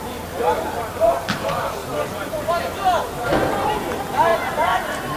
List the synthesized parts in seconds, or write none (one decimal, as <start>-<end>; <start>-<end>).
none